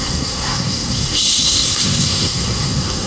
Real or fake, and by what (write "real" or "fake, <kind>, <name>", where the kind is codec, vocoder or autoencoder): fake, codec, SNAC